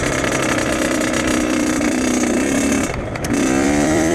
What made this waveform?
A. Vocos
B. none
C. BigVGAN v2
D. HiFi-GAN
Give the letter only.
C